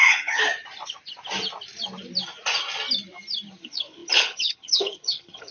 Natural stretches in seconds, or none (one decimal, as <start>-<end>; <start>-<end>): 0.5-3.6